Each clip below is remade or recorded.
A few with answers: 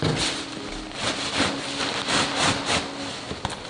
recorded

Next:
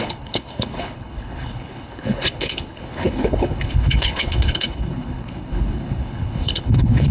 remade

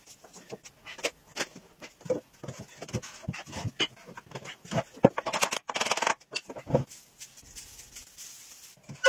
recorded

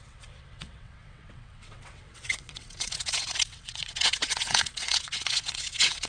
remade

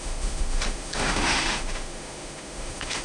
remade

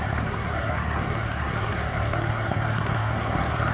remade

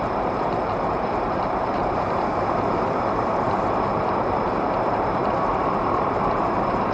remade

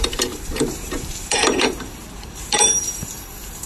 remade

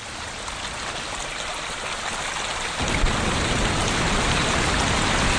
recorded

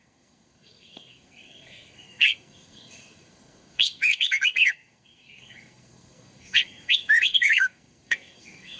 remade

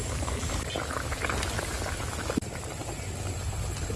recorded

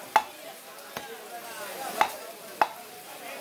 recorded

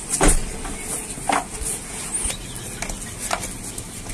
recorded